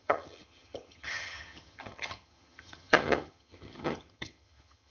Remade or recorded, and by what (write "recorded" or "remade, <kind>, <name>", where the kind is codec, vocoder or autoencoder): remade, vocoder, HiFi-GAN